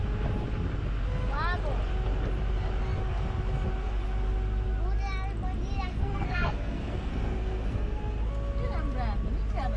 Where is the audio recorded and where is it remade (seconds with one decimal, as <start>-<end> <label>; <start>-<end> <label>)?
0.0-5.9 recorded; 5.9-8.0 remade; 8.0-9.8 recorded